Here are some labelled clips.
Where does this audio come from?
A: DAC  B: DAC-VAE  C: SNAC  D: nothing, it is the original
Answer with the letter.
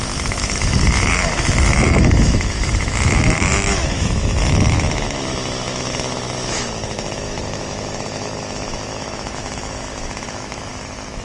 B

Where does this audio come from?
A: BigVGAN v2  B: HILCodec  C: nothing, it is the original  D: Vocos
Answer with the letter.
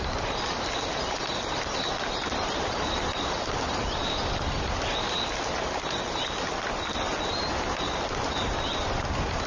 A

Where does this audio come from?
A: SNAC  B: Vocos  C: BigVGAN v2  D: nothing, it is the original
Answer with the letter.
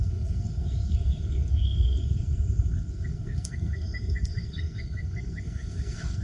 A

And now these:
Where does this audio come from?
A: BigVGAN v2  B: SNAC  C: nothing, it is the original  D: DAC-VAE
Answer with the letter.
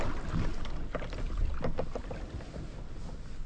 C